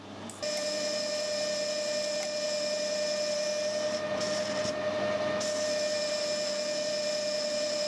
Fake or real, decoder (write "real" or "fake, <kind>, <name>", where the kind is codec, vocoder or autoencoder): real